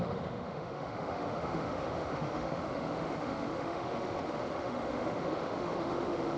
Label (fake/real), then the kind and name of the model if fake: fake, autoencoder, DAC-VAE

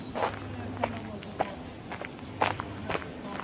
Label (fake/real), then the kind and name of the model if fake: real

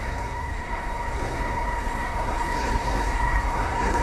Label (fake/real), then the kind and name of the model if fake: fake, codec, SNAC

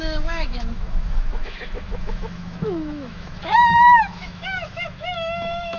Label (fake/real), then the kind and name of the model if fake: fake, autoencoder, DAC-VAE